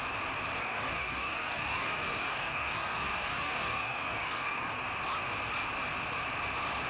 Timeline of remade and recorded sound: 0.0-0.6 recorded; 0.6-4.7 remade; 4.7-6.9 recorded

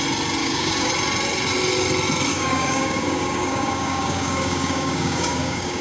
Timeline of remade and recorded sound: 0.0-0.4 recorded; 0.4-0.9 remade; 0.9-2.3 recorded; 2.3-5.8 remade

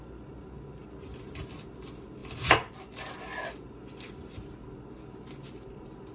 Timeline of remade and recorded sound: 0.0-6.1 recorded

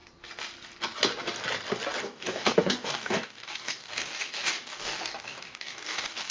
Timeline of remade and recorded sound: 0.0-2.0 recorded; 2.0-6.3 remade